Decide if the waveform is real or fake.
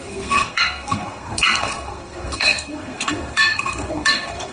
fake